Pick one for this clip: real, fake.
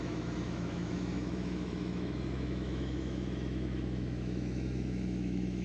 fake